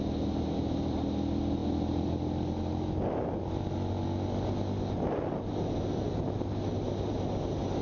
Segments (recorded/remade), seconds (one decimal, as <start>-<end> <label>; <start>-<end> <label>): 0.0-7.8 recorded